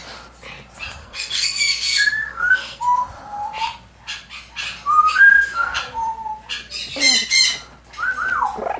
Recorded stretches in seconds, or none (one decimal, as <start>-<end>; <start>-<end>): 0.0-1.0; 2.8-5.0; 5.8-8.8